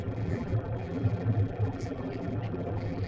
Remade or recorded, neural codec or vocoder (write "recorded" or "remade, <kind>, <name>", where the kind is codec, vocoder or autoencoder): remade, vocoder, BigVGAN v2